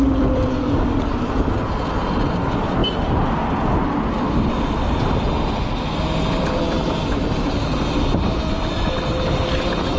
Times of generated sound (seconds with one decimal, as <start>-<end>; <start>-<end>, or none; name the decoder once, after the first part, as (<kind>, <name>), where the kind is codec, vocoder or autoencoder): 0.5-1.1 (codec, DAC)

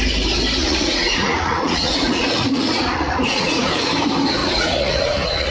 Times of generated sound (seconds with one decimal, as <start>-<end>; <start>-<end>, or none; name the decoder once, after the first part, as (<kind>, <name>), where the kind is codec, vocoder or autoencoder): 0.6-3.9 (vocoder, Vocos); 4.4-5.5

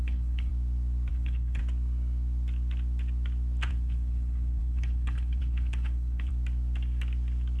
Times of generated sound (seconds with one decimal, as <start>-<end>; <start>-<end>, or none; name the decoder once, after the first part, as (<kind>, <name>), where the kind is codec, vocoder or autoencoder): 0.0-0.5 (codec, HILCodec); 1.1-1.6; 3.7-6.3

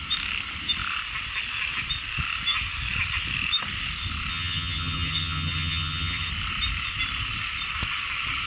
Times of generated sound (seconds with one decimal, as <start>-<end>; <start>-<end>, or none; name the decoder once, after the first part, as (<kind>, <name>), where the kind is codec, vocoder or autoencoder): 4.3-6.3 (vocoder, HiFi-GAN)

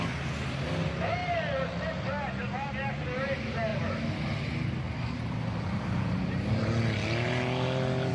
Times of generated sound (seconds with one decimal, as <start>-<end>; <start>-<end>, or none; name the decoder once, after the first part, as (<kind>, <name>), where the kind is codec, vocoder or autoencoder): none